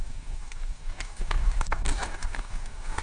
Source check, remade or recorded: remade